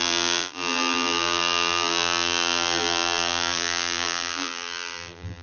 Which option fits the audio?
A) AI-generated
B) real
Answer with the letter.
A